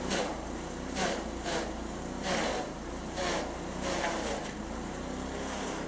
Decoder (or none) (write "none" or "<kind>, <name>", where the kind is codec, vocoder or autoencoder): vocoder, BigVGAN v2